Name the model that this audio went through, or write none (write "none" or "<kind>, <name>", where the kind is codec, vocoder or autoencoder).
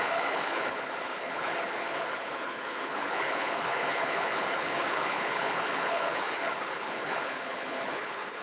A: codec, HILCodec